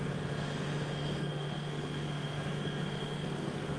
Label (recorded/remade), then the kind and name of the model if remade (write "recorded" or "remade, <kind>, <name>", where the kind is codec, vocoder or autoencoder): remade, codec, SNAC